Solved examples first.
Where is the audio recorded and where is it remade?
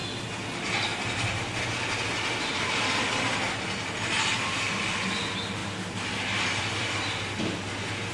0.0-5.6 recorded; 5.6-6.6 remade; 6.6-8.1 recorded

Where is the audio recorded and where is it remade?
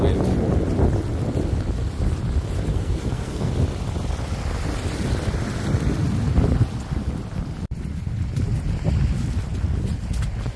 0.0-2.7 recorded; 2.7-3.5 remade; 3.5-10.6 recorded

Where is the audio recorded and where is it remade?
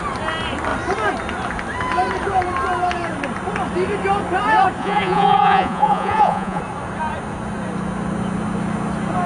0.0-4.8 recorded; 4.8-6.6 remade; 6.6-9.3 recorded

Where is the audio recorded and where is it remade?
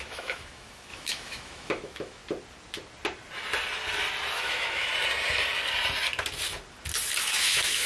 0.0-2.2 remade; 2.2-4.3 recorded; 4.3-4.9 remade; 4.9-7.2 recorded; 7.2-7.9 remade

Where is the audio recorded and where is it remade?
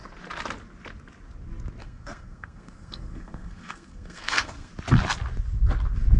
0.0-1.8 recorded; 1.8-4.7 remade; 4.7-6.2 recorded